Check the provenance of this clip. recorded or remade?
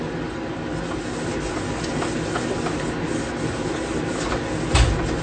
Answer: recorded